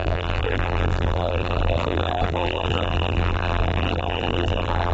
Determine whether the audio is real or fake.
fake